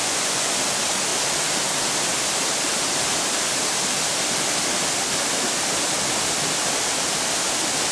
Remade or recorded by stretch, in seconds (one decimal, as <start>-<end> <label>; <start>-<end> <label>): 0.0-0.5 remade; 0.5-7.9 recorded